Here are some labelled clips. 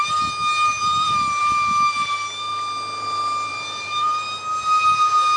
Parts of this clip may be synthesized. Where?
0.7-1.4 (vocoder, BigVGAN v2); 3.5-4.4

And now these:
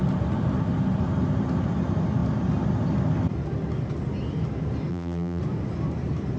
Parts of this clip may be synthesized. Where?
4.9-5.4 (vocoder, BigVGAN v2)

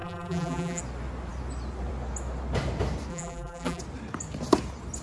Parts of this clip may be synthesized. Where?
0.0-0.8 (vocoder, BigVGAN v2); 3.1-3.8

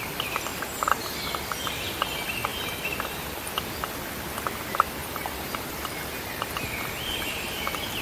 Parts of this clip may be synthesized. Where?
0.5-1.3 (vocoder, BigVGAN v2); 5.0-6.7

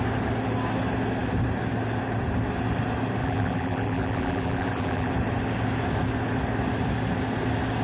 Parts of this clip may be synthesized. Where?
3.2-5.1 (vocoder, BigVGAN v2)

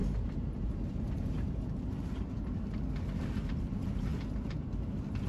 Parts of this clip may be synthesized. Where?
0.0-2.6 (vocoder, BigVGAN v2)

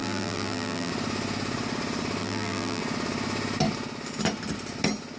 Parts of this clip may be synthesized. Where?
0.0-0.9 (vocoder, BigVGAN v2); 2.2-2.8